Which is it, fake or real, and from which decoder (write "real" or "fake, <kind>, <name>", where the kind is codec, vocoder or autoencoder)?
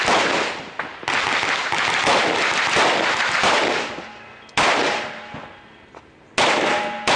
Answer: real